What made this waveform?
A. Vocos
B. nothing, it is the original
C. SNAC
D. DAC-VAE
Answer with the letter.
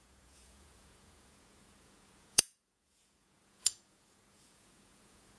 A